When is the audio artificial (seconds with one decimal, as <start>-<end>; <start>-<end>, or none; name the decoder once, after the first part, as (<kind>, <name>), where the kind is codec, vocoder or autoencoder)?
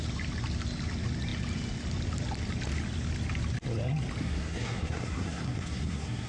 4.2-6.3 (codec, SNAC)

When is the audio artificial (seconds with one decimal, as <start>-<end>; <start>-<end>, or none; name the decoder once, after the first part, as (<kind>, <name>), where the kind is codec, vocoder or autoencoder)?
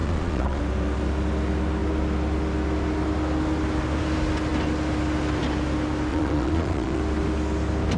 0.0-0.6 (vocoder, Vocos); 6.1-7.0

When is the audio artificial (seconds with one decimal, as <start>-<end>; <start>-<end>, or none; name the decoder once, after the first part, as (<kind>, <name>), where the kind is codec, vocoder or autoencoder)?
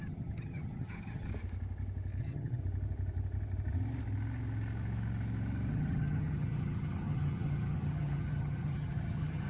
0.0-1.3 (vocoder, HiFi-GAN); 2.2-2.6; 5.7-9.5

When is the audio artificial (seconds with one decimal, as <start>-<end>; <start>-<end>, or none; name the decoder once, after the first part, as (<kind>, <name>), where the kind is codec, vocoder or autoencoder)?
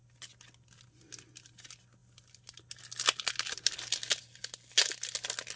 none